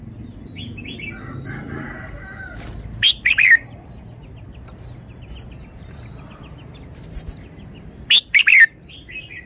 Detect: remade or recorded recorded